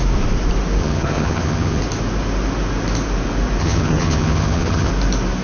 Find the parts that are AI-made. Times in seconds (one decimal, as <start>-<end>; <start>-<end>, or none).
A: 0.8-1.8; 3.6-4.9